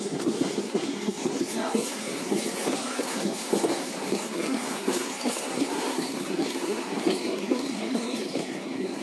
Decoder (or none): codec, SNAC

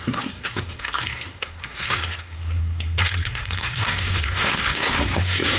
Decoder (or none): codec, SNAC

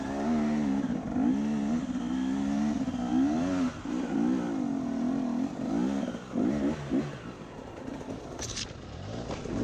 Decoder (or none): none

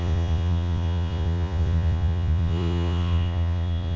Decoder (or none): vocoder, Vocos